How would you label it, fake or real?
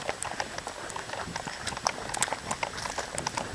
real